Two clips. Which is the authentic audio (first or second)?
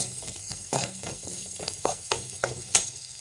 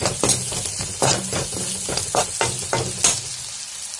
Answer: second